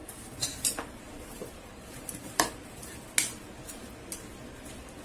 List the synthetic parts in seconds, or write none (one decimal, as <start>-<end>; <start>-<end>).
0.0-3.0